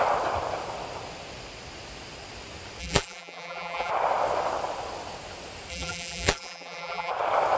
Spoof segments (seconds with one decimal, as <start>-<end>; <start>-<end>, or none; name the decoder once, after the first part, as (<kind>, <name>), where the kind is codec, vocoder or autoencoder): 2.8-3.9 (vocoder, BigVGAN v2); 5.7-7.1